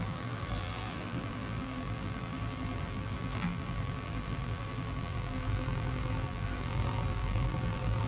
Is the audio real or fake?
fake